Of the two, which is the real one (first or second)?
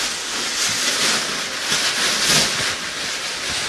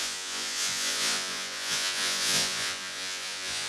first